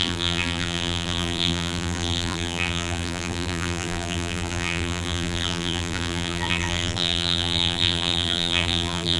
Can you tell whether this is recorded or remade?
remade